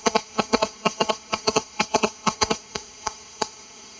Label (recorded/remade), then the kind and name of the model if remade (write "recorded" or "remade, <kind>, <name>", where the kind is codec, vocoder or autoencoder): remade, codec, SNAC